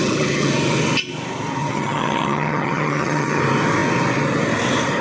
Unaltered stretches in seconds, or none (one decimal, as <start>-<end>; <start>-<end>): 0.5-1.6; 3.4-5.0